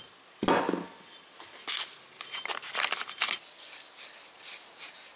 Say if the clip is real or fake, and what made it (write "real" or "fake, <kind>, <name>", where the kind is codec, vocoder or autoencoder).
real